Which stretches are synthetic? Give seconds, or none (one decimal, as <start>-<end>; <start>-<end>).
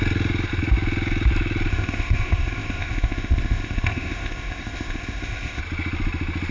1.7-5.6